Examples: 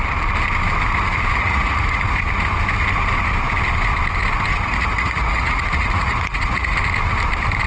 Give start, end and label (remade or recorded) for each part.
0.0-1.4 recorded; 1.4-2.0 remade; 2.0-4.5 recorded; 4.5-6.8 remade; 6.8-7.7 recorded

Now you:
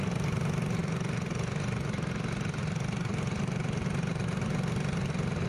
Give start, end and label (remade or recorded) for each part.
0.0-5.5 recorded

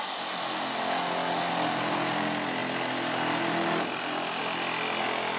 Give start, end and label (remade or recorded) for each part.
0.0-5.4 recorded

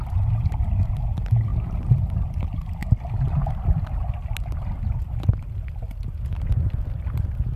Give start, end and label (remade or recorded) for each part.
0.0-7.6 recorded

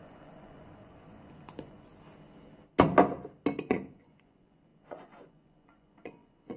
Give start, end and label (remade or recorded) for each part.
0.0-1.9 remade; 1.9-3.6 recorded; 3.6-6.6 remade

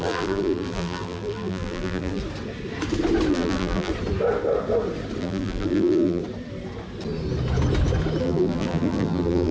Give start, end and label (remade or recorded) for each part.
0.0-2.2 remade; 2.2-3.3 recorded; 3.3-3.9 remade; 3.9-5.2 recorded; 5.2-6.2 remade; 6.2-8.2 recorded; 8.2-9.5 remade